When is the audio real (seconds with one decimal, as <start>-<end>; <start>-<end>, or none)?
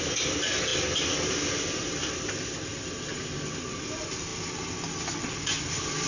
0.0-6.1